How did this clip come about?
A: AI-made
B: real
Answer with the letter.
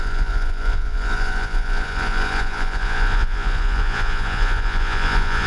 A